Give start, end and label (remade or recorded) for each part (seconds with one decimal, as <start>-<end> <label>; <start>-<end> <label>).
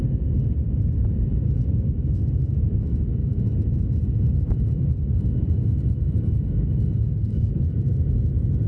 0.0-7.1 recorded; 7.1-7.6 remade; 7.6-8.7 recorded